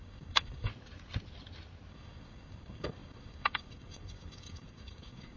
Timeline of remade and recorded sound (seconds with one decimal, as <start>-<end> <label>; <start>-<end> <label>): 0.0-0.7 remade; 0.7-1.9 recorded; 1.9-5.4 remade